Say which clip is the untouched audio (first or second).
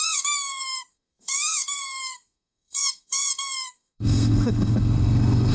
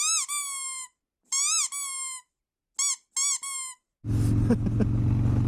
second